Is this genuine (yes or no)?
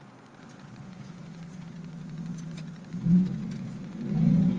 no